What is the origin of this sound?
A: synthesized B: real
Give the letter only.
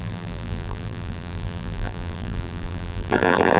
A